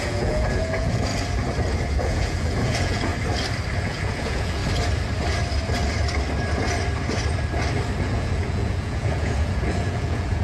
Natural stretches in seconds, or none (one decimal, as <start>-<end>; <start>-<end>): 1.1-1.9; 3.1-3.8; 4.6-8.0